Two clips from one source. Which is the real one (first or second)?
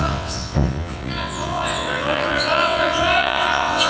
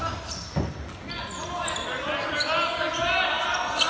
second